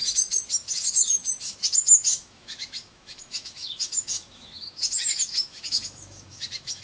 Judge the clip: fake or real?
fake